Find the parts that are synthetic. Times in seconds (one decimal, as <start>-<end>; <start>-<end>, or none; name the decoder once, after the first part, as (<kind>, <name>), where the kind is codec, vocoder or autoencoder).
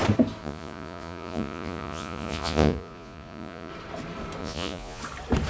0.4-3.7 (vocoder, Vocos); 4.4-5.0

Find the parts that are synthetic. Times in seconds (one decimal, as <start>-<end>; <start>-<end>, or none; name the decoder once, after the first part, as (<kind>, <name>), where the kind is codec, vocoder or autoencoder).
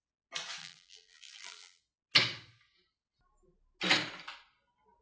0.6-1.8 (vocoder, BigVGAN v2)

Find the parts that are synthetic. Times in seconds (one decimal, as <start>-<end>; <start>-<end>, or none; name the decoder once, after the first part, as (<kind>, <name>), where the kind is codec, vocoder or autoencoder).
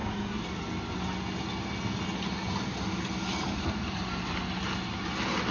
0.0-0.6 (vocoder, BigVGAN v2); 2.7-4.7